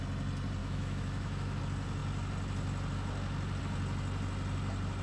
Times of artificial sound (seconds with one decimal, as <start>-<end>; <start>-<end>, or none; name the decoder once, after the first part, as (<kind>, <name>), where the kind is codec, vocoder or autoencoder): 0.6-1.6 (autoencoder, DAC-VAE)